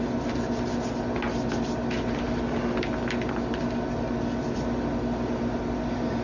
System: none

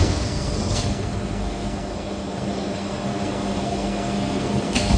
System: codec, SNAC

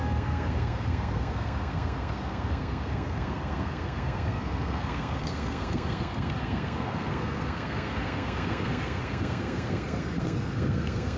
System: codec, SNAC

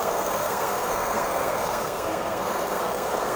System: codec, SNAC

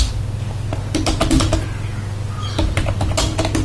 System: none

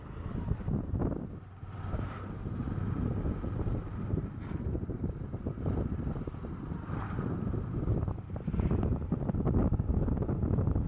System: none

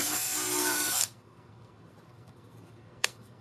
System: codec, SNAC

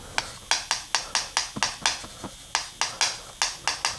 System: none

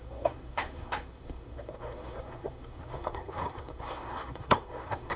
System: codec, SNAC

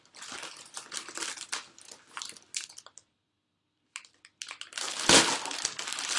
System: none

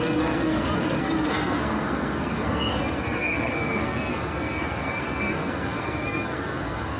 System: codec, SNAC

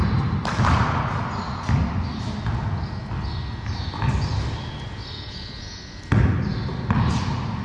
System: none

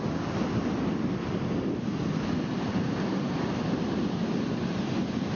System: none